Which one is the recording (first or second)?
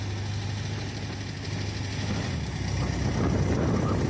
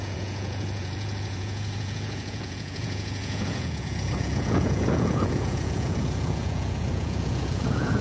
first